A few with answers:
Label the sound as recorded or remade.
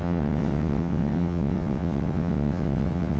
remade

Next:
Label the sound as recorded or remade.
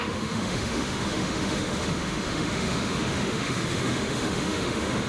remade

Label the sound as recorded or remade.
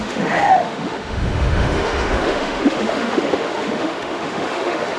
remade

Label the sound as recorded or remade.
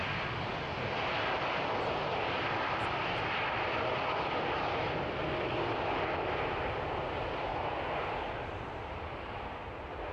recorded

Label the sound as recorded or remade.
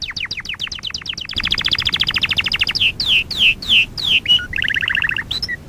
recorded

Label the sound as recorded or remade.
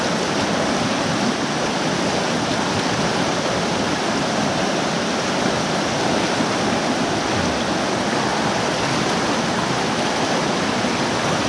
recorded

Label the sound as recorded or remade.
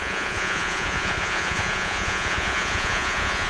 remade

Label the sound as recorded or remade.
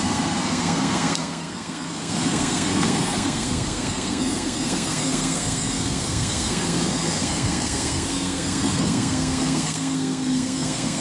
remade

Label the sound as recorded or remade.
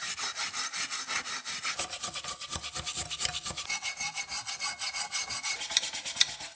recorded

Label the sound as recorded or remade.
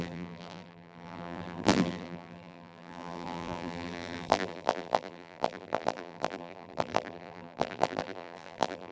remade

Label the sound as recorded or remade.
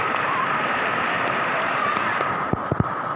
recorded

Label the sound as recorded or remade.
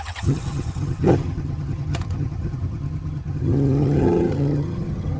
remade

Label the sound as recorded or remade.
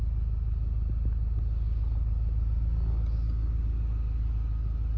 recorded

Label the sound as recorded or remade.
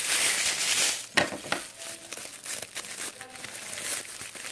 recorded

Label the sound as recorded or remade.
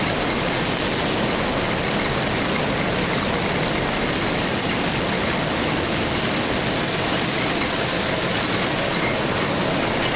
recorded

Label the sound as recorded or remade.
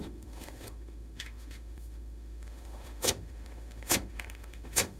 remade